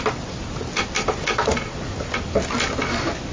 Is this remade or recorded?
recorded